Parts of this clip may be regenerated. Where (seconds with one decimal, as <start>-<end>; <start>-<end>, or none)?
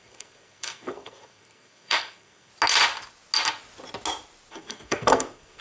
0.0-2.5; 4.5-5.6